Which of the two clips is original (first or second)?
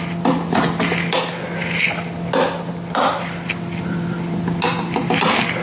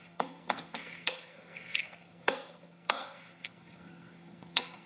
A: first